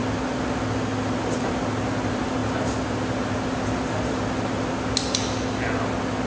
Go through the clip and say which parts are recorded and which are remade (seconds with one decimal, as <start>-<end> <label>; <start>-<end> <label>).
0.0-6.3 recorded